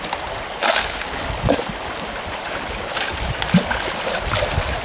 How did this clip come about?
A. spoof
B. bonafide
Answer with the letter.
B